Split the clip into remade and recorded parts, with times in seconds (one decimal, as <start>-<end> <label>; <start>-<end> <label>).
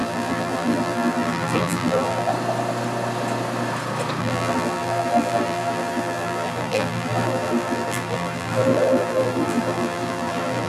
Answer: 0.0-2.3 remade; 2.3-4.2 recorded; 4.2-10.7 remade